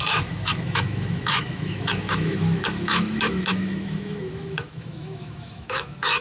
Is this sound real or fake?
fake